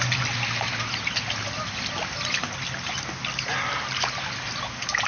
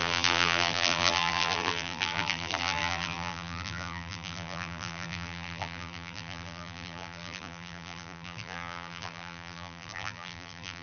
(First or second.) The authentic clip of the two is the first